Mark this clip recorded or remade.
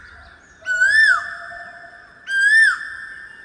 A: recorded